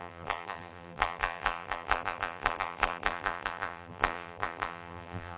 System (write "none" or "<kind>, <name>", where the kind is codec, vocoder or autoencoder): vocoder, BigVGAN v2